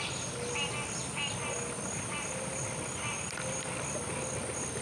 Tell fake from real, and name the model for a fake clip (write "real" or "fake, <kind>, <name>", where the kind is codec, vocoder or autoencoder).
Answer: real